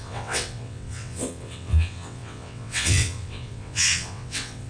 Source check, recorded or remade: remade